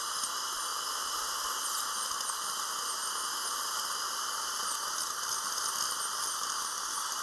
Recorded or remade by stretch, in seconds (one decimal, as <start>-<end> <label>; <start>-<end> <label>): 0.0-7.2 recorded